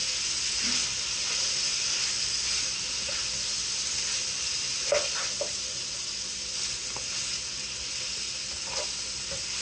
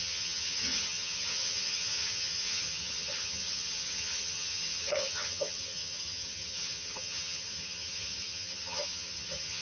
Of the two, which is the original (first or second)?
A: first